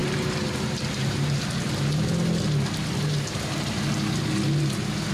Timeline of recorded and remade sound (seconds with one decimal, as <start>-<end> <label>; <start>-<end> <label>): 0.0-1.4 remade; 1.4-5.1 recorded